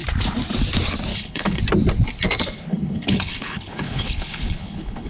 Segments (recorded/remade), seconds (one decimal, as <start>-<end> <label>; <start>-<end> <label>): 0.0-1.1 recorded; 1.1-1.6 remade; 1.6-2.7 recorded; 2.7-5.1 remade